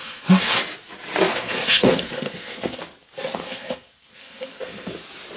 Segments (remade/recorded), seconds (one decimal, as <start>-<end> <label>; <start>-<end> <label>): 0.0-0.6 remade; 0.6-1.3 recorded; 1.3-2.8 remade; 2.8-3.3 recorded; 3.3-4.9 remade; 4.9-5.4 recorded